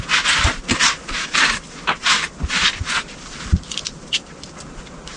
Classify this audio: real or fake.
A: real